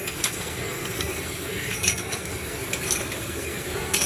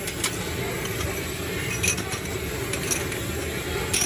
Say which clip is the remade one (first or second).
first